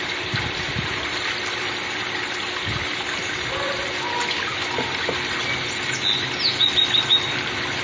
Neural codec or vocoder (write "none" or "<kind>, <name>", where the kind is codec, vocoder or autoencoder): none